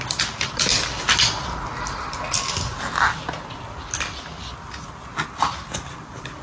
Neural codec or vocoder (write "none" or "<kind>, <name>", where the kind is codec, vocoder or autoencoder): none